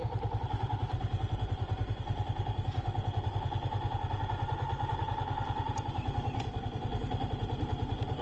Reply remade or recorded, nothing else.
recorded